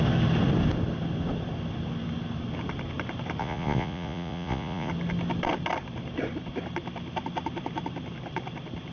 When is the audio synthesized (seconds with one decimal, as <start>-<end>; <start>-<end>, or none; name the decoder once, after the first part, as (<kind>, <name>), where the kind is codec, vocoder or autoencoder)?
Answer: 3.4-4.9 (vocoder, Vocos)